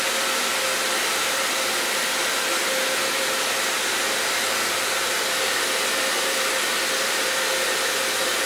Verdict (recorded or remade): recorded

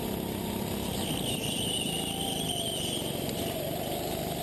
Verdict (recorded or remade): recorded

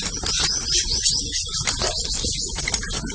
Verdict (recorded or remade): recorded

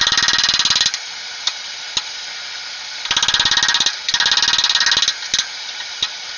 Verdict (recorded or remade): recorded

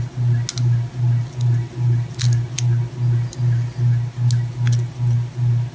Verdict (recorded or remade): recorded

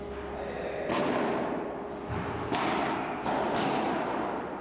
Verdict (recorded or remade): recorded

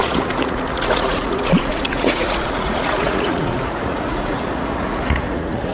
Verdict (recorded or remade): remade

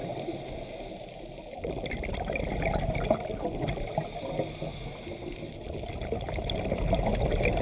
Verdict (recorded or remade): recorded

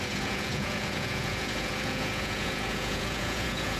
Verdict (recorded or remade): remade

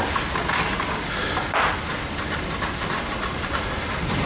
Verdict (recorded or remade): recorded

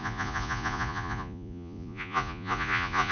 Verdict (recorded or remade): remade